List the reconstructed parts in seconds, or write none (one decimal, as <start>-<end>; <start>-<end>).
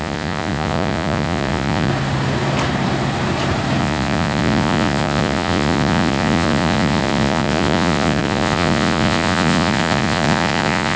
0.0-1.9; 3.8-11.0